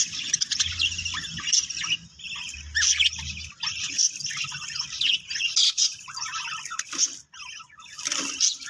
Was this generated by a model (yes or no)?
no